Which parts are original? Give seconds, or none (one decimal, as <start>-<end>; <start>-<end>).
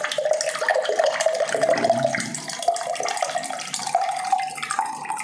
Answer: 0.0-5.2